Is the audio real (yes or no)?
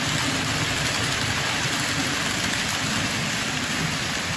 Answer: yes